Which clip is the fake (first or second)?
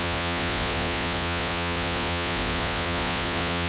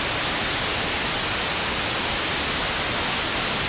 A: first